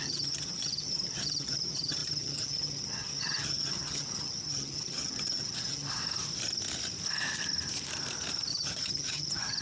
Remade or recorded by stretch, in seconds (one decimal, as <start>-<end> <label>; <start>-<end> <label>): 0.0-6.0 remade; 6.0-8.5 recorded; 8.5-9.6 remade